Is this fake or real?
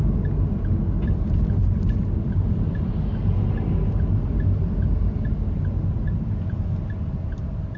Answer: real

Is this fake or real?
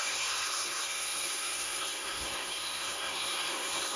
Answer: fake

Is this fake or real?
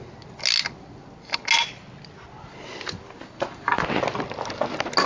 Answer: real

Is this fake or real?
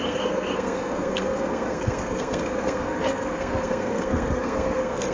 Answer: fake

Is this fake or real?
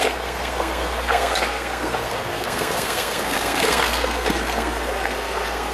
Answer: fake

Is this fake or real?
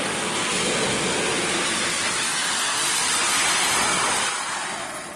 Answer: real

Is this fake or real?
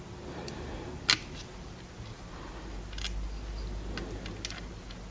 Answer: real